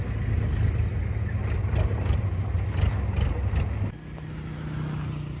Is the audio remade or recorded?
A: recorded